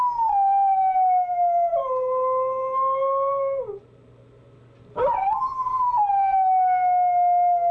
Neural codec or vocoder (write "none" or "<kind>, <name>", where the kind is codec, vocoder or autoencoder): none